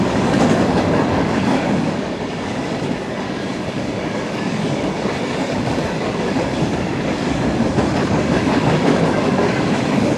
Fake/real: fake